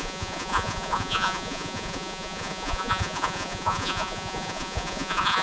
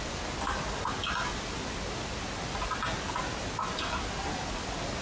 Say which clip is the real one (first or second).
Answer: second